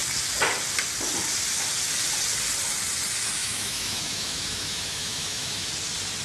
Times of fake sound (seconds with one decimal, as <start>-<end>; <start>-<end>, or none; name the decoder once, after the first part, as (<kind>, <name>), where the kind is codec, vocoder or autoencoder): 3.4-5.7 (autoencoder, DAC-VAE)